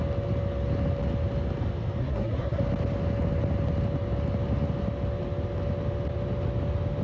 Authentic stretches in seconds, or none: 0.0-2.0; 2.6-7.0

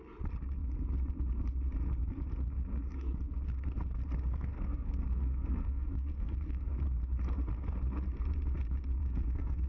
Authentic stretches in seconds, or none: 0.0-4.5; 6.7-9.0

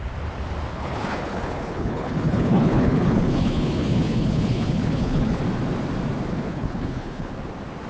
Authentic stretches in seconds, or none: 0.0-0.7; 5.4-6.3; 7.3-7.9

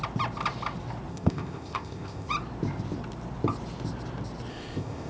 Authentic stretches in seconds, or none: 0.0-1.1; 2.3-4.5

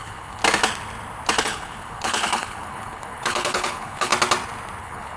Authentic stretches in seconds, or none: 0.4-1.4; 4.1-4.8

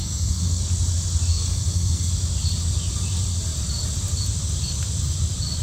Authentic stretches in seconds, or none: 0.6-1.3; 2.1-5.6

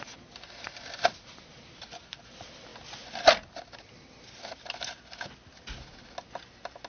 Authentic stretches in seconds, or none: 0.0-6.9

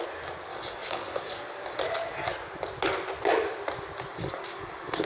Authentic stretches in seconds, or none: 0.0-0.5; 1.8-4.1